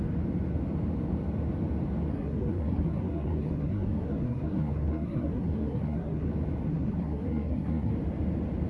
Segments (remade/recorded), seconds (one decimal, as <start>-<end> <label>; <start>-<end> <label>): 0.0-2.1 recorded; 2.1-6.3 remade; 6.3-6.7 recorded; 6.7-7.9 remade; 7.9-8.7 recorded